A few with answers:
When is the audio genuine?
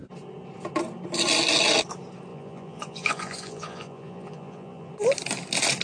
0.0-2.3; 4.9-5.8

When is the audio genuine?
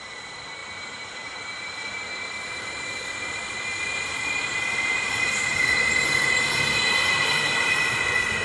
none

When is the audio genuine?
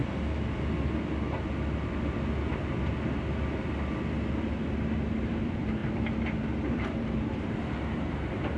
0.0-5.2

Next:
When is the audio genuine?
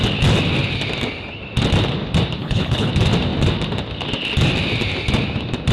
0.0-2.4; 2.9-5.7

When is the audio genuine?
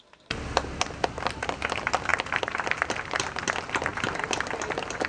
0.0-2.1; 3.3-3.9; 4.5-5.1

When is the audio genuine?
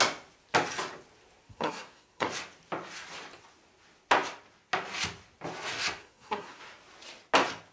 0.0-1.5; 2.3-6.0; 6.6-7.7